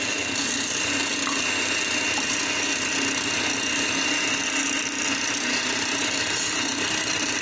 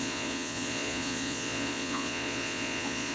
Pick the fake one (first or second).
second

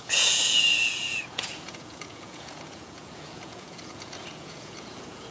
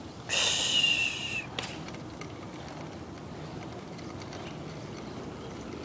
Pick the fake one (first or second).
first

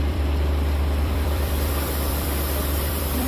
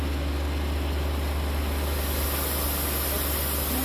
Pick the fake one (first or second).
first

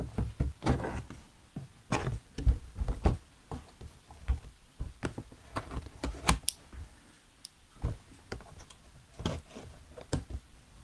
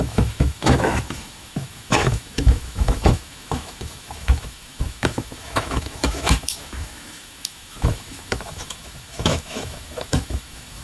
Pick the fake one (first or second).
second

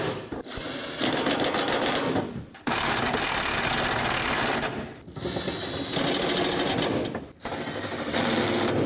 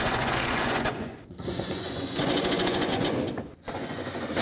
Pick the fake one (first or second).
second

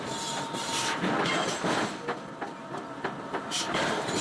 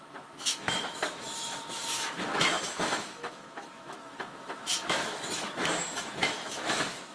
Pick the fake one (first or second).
second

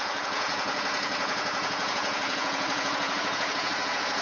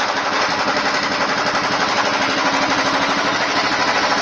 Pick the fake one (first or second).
first